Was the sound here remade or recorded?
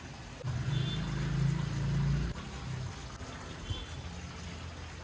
recorded